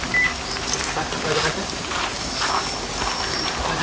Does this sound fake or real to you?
real